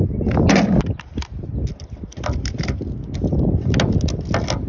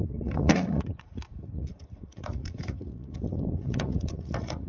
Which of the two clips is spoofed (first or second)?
second